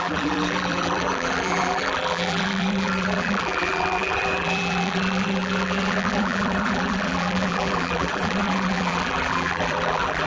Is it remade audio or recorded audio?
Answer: remade